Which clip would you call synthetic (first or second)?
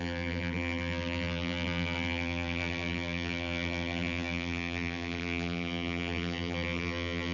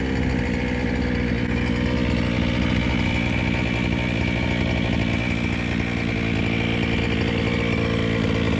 first